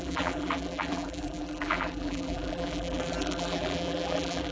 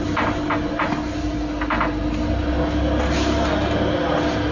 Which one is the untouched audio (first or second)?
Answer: second